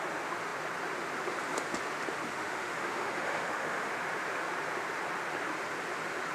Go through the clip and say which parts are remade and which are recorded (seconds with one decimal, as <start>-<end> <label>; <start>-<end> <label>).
0.0-2.3 recorded; 2.3-3.9 remade; 3.9-6.3 recorded